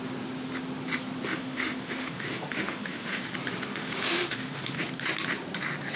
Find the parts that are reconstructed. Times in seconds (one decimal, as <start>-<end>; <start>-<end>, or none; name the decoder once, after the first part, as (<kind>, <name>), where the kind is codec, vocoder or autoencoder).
1.3-3.2 (autoencoder, DAC-VAE); 3.7-4.8